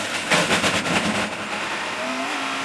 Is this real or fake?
real